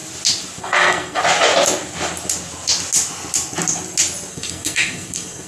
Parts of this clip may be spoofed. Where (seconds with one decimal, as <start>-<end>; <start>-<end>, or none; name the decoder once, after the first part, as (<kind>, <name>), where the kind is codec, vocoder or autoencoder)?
0.6-1.2 (codec, SNAC); 4.3-5.5